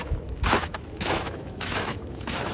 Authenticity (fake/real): fake